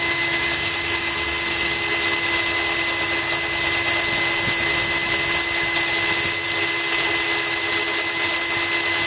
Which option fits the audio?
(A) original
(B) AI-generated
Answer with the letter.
A